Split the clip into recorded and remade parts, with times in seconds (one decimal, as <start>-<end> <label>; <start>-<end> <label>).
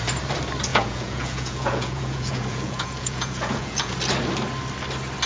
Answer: 0.0-0.7 recorded; 0.7-3.9 remade; 3.9-5.3 recorded